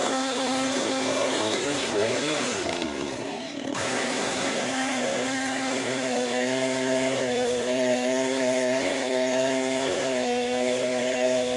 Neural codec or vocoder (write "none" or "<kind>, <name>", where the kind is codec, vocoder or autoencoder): codec, SNAC